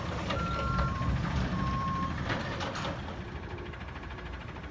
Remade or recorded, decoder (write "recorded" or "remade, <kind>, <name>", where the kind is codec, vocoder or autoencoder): remade, vocoder, BigVGAN v2